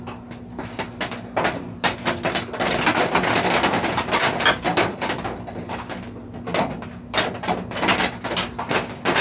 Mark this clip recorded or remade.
recorded